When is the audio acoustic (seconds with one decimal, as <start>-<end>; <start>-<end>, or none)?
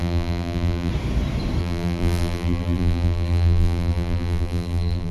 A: 0.9-1.6